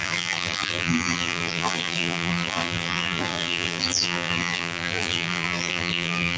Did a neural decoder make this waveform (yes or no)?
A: yes